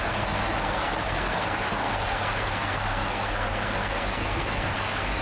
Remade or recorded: remade